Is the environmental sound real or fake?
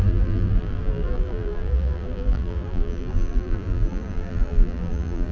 fake